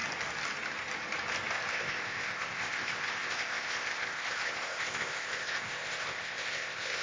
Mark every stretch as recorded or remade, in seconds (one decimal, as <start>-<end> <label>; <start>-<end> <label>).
0.0-1.7 recorded; 1.7-7.0 remade